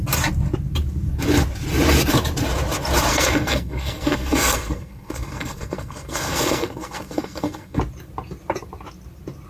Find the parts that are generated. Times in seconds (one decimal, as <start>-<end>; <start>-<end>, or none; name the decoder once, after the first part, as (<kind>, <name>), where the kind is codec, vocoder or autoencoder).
3.1-7.8 (codec, SNAC)